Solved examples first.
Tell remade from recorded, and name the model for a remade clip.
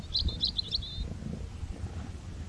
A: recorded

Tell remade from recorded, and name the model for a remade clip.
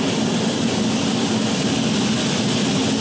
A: recorded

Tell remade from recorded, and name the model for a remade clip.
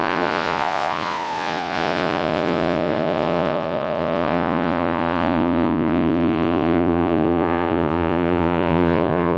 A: remade, vocoder, Vocos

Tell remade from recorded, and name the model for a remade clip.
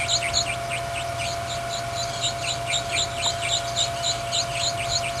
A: recorded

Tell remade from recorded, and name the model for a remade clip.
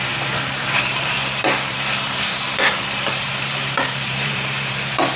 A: remade, vocoder, BigVGAN v2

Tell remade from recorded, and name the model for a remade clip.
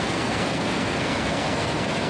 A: remade, codec, SNAC